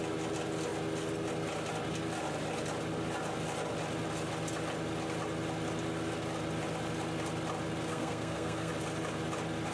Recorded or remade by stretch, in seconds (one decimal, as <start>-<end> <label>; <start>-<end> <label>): 0.0-7.9 recorded; 7.9-8.7 remade; 8.7-9.7 recorded